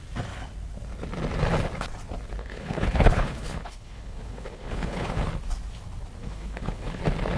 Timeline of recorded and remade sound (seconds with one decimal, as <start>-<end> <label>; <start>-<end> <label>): 0.0-2.4 recorded; 2.4-5.2 remade; 5.2-6.2 recorded; 6.2-7.0 remade; 7.0-7.4 recorded